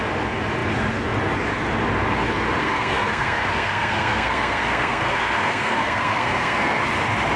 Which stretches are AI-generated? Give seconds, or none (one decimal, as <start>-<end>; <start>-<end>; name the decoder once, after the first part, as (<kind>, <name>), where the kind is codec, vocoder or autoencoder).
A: 2.6-6.8 (codec, SNAC)